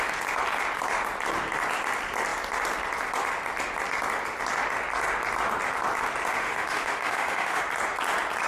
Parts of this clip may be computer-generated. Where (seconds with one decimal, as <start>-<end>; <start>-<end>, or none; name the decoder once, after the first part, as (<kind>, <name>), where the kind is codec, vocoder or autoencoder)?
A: 6.3-7.6 (autoencoder, DAC-VAE)